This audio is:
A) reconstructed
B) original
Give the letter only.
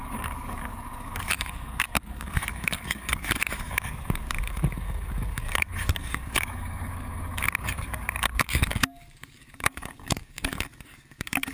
A